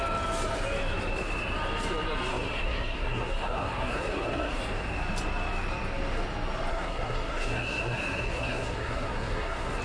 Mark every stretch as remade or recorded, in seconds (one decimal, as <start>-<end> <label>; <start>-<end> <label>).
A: 0.0-2.3 recorded; 2.3-4.6 remade; 4.6-6.7 recorded; 6.7-9.8 remade